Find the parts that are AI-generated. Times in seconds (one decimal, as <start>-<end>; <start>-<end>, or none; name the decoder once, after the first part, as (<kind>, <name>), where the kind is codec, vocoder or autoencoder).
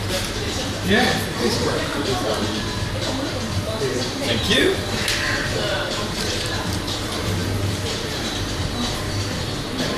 0.0-10.0 (vocoder, BigVGAN v2)